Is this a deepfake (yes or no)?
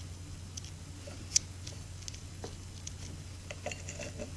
no